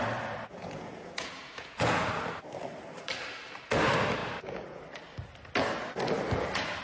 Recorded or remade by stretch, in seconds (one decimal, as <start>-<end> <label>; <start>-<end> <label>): 0.0-0.5 recorded; 0.5-2.1 remade; 2.1-4.2 recorded; 4.2-4.8 remade; 4.8-6.8 recorded